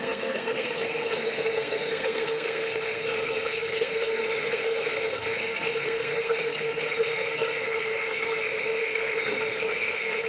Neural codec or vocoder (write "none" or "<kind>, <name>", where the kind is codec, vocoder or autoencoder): codec, SNAC